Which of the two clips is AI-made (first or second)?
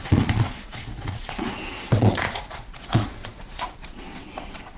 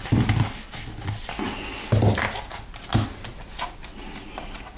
first